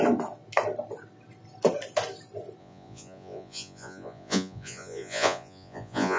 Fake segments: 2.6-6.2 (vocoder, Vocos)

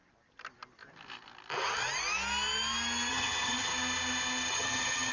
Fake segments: 3.1-3.7 (vocoder, HiFi-GAN); 4.5-5.1

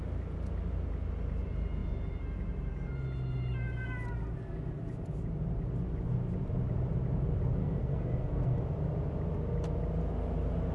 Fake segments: 7.6-8.6 (codec, SNAC)

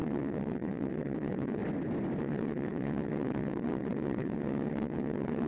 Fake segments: 0.0-1.6 (vocoder, WaveNeXt); 2.2-5.5

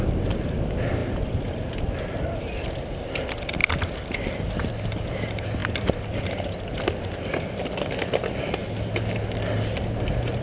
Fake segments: none